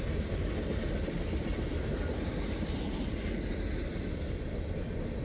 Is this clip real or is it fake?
real